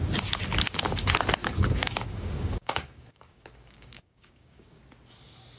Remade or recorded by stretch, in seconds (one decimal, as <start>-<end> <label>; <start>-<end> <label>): 0.0-1.4 recorded; 1.4-4.8 remade; 4.8-5.6 recorded